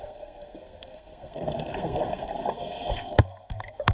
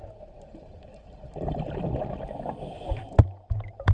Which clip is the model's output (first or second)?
first